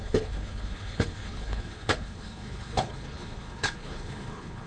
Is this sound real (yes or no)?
no